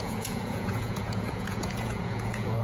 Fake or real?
fake